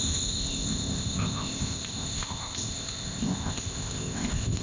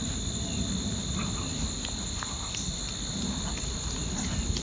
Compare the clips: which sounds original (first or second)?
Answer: second